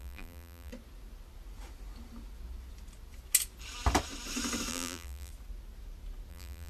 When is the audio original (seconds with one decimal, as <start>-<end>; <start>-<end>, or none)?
0.7-4.7; 5.3-6.3